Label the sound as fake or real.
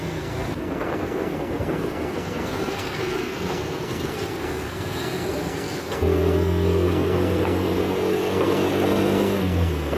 fake